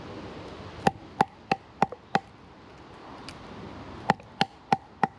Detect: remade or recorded recorded